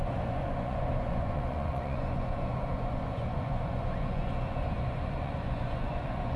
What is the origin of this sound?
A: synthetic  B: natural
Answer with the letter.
A